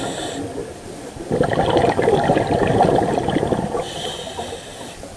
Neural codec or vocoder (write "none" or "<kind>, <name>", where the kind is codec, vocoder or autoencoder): none